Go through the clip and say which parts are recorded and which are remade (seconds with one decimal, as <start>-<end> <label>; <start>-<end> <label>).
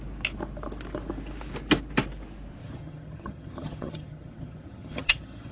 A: 0.0-2.6 recorded; 2.6-5.5 remade